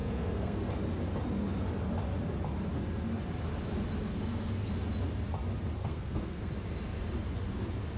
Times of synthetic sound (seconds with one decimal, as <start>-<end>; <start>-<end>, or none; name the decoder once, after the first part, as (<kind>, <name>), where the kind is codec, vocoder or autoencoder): 0.0-0.7 (codec, SNAC); 4.1-4.7; 5.8-6.5